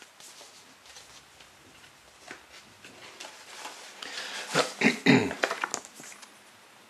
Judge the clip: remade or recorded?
recorded